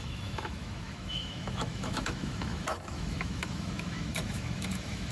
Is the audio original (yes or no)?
no